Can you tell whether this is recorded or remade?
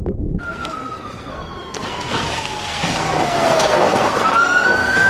remade